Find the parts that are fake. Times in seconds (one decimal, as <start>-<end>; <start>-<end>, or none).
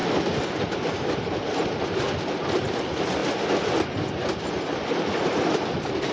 none